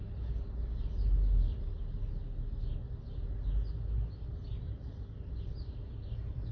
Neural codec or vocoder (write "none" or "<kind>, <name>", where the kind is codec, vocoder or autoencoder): none